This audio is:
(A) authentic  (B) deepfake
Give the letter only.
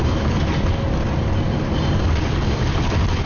A